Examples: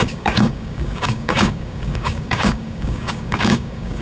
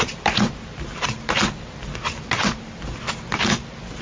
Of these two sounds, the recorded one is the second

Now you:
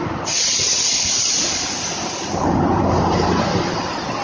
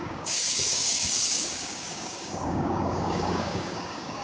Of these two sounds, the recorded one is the first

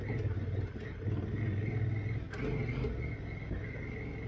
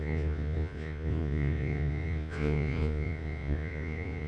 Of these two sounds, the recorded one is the first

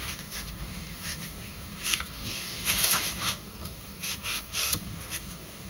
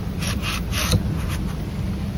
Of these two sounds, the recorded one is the second